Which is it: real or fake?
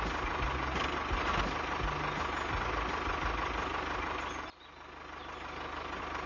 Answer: real